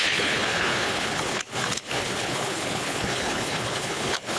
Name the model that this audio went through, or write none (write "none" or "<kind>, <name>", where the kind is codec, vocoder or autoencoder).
codec, HILCodec